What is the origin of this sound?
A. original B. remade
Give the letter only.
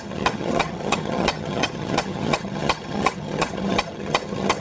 B